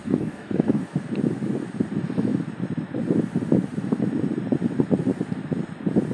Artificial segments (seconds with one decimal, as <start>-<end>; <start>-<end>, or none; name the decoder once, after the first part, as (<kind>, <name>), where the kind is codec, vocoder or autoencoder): 0.0-0.8 (codec, DAC)